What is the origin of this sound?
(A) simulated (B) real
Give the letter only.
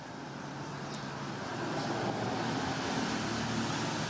B